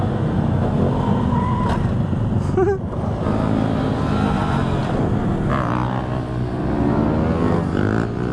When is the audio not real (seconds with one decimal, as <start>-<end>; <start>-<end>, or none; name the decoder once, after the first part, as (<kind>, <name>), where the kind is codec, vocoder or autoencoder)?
4.8-5.3 (vocoder, BigVGAN v2)